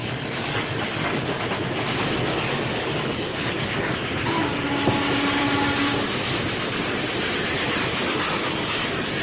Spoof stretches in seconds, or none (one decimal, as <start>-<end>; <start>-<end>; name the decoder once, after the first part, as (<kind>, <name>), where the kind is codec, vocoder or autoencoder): 0.0-1.5 (codec, DAC); 2.2-3.9; 7.9-9.2